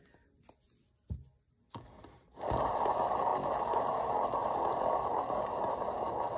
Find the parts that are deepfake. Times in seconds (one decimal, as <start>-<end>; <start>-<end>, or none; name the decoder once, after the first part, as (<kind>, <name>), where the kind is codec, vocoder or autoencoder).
none